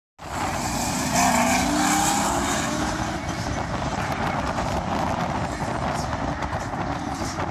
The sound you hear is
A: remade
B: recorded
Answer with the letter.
B